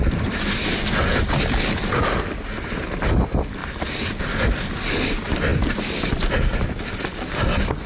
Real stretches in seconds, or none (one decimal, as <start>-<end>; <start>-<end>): 0.0-5.5; 6.1-7.9